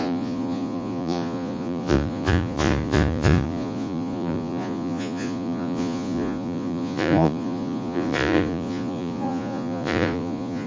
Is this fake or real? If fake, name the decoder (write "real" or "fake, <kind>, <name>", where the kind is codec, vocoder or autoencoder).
fake, vocoder, Vocos